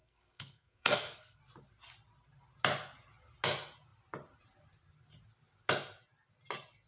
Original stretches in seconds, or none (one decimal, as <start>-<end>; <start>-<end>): 1.4-6.9